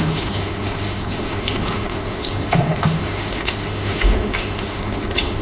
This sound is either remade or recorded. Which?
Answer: remade